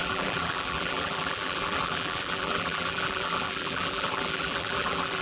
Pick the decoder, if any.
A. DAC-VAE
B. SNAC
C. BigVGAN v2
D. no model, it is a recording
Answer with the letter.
C